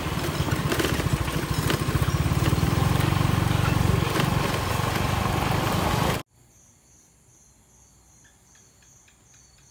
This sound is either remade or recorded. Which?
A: recorded